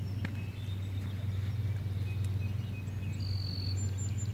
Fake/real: real